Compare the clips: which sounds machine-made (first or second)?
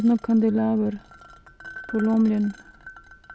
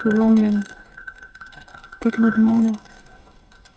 second